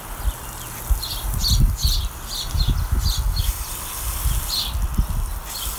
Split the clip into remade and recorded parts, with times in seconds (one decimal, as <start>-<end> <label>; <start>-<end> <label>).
0.0-5.8 recorded